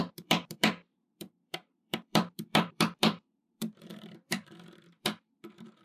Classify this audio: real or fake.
fake